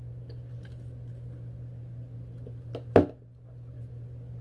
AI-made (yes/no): no